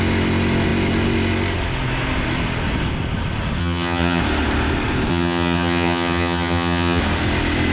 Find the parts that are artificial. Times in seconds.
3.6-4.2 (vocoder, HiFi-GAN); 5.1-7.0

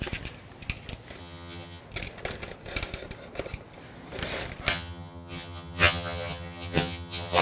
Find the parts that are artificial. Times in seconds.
1.2-1.8 (vocoder, HiFi-GAN); 4.7-7.4